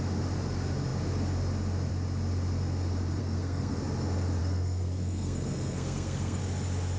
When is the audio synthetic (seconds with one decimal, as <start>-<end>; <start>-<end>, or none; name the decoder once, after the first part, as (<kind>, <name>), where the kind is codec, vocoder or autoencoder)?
3.2-3.8 (codec, SNAC); 4.4-6.4